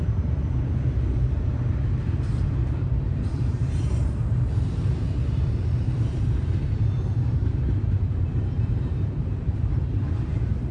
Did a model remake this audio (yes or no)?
yes